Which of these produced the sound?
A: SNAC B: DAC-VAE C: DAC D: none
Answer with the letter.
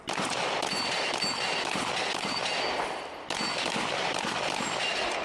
D